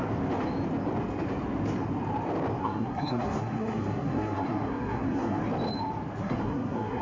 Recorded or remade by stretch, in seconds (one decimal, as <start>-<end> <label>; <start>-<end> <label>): 0.0-2.6 recorded; 2.6-5.4 remade; 5.4-6.2 recorded; 6.2-7.0 remade